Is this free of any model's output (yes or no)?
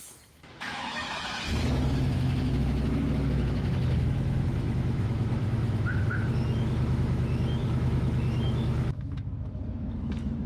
no